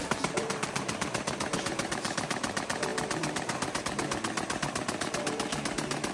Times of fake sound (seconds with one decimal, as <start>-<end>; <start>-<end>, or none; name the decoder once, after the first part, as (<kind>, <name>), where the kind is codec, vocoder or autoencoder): 0.0-6.1 (vocoder, BigVGAN v2)